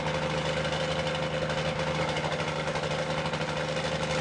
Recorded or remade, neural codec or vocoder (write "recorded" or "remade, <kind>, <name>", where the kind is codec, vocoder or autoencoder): recorded